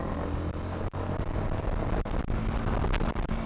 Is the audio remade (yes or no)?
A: no